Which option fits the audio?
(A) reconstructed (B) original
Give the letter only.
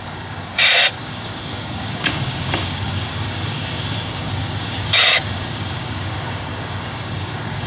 A